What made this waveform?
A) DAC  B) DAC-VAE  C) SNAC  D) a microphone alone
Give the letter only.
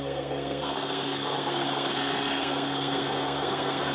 C